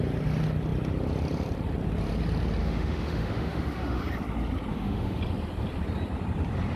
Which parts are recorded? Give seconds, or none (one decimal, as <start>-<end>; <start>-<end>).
0.0-2.6; 4.0-4.7; 5.2-6.8